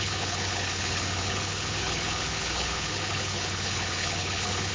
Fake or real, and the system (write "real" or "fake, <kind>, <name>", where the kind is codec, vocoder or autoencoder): fake, codec, HILCodec